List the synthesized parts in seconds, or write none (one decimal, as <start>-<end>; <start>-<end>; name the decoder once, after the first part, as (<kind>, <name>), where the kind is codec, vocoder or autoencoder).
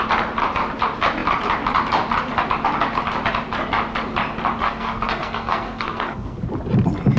4.6-6.4 (codec, SNAC)